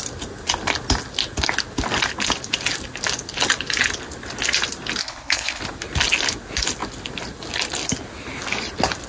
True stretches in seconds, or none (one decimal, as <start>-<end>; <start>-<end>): 0.0-5.0; 5.6-9.1